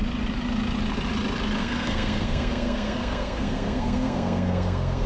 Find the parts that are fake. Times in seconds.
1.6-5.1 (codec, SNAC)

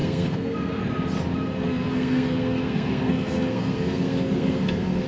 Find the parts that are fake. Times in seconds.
0.0-0.8 (codec, SNAC); 1.9-5.1